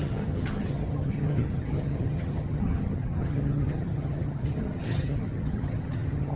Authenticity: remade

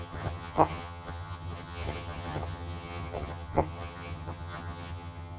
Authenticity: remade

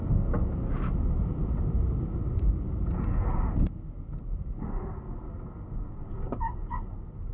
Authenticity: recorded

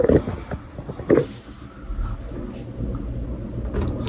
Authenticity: recorded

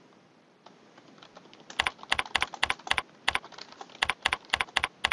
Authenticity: recorded